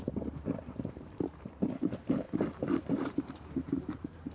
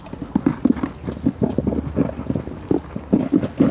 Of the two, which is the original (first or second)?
second